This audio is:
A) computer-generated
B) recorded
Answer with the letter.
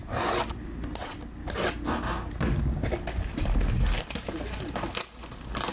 B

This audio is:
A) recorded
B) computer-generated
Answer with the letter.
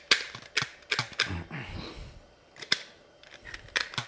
A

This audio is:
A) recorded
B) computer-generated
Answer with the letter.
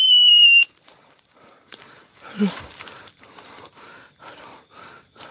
B